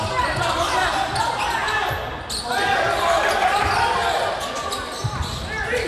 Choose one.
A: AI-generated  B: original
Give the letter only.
B